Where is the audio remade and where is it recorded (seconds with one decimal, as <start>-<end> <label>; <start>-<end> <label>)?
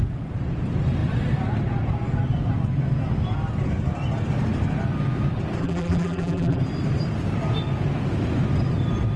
0.0-5.6 recorded; 5.6-6.6 remade; 6.6-9.2 recorded